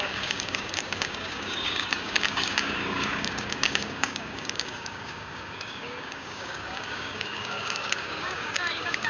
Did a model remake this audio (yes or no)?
yes